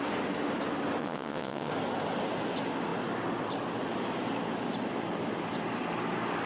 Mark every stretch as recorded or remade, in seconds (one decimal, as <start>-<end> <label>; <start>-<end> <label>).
0.0-1.0 recorded; 1.0-1.7 remade; 1.7-6.5 recorded